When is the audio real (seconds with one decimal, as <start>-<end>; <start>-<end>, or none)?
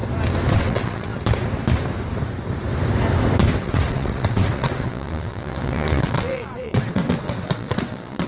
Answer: 0.0-0.5; 1.1-3.6